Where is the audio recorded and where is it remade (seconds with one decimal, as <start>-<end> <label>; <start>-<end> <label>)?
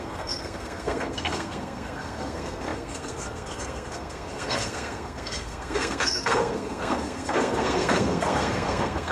0.0-9.1 remade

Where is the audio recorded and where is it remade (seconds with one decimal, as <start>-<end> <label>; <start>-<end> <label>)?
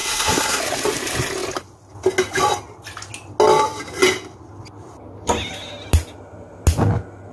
0.0-0.6 remade; 0.6-7.3 recorded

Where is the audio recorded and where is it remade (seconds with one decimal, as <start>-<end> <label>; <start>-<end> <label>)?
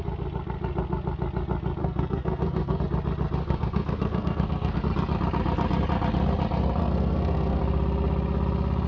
0.0-1.8 recorded; 1.8-2.8 remade; 2.8-3.4 recorded; 3.4-4.8 remade; 4.8-6.8 recorded; 6.8-7.6 remade; 7.6-8.9 recorded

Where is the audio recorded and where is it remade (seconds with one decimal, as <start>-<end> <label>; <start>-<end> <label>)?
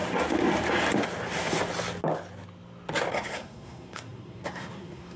0.0-3.1 recorded; 3.1-5.2 remade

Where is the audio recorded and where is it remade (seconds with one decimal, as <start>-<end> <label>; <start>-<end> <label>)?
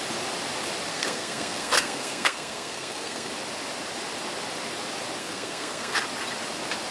0.0-0.9 recorded; 0.9-3.3 remade; 3.3-5.2 recorded; 5.2-6.0 remade; 6.0-6.9 recorded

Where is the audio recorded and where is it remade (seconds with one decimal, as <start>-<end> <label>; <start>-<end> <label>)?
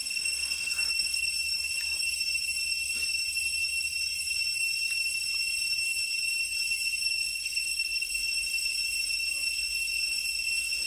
0.0-1.3 remade; 1.3-7.0 recorded; 7.0-8.1 remade; 8.1-10.9 recorded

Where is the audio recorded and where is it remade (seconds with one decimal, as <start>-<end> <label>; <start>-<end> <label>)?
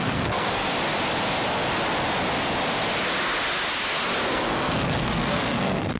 0.0-0.7 remade; 0.7-4.3 recorded; 4.3-6.0 remade